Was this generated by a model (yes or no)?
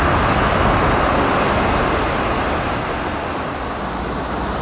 no